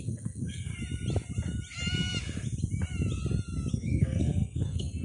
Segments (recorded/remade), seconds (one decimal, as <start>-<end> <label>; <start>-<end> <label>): 0.0-0.7 remade; 0.7-3.7 recorded; 3.7-5.0 remade